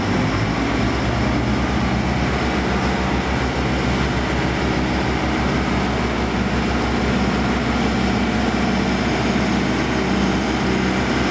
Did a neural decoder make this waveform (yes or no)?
no